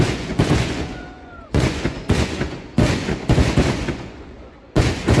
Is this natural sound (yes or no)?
no